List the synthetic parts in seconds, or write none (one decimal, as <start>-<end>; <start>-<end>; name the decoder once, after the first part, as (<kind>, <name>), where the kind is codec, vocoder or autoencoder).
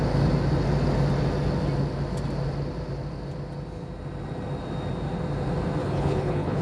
5.8-6.6 (codec, HILCodec)